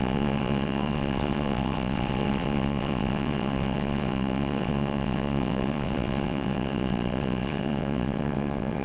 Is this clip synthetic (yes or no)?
yes